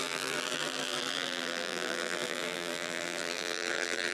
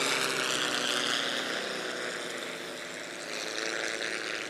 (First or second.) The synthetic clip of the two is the first